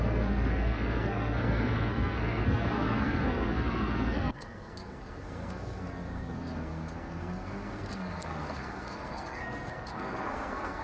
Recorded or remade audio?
remade